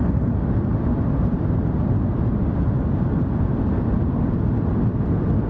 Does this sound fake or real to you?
real